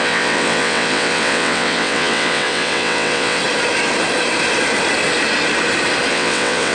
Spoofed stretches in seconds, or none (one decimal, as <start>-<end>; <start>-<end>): 0.0-3.4; 6.1-6.7